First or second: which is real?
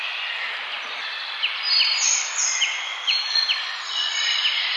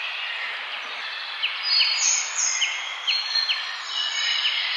second